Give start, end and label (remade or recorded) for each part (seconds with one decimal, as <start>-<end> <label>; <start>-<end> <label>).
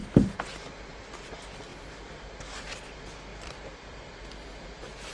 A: 0.0-1.7 recorded; 1.7-2.2 remade; 2.2-3.3 recorded; 3.3-4.5 remade; 4.5-5.1 recorded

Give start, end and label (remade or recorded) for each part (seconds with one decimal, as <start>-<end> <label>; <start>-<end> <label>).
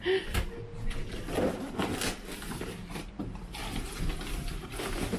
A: 0.0-5.2 recorded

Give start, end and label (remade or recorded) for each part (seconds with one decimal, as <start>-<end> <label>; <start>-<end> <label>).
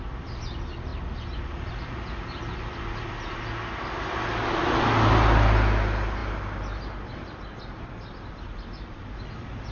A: 0.0-9.7 recorded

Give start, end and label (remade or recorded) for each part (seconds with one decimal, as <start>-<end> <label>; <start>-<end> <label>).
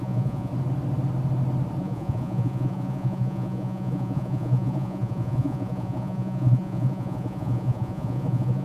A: 0.0-0.5 remade; 0.5-1.8 recorded; 1.8-8.6 remade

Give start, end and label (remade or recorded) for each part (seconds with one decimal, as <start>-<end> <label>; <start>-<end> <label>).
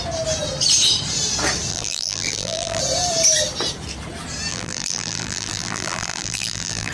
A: 0.0-1.7 recorded; 1.7-2.8 remade; 2.8-4.5 recorded; 4.5-6.9 remade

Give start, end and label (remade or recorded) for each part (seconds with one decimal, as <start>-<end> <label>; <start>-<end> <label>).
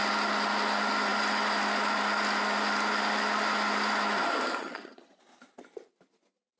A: 0.0-4.6 recorded; 4.6-5.2 remade; 5.2-6.6 recorded